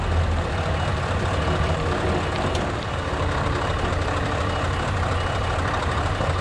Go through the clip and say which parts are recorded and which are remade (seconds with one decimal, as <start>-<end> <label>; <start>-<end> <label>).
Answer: 0.0-6.4 remade